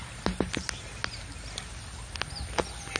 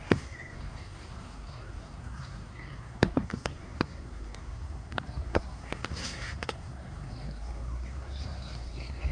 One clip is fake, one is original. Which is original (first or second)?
first